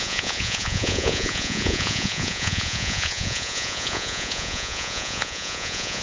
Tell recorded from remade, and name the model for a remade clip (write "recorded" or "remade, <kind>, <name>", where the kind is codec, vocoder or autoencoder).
remade, vocoder, Vocos